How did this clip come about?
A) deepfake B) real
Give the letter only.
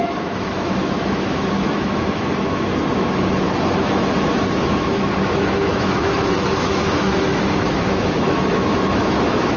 A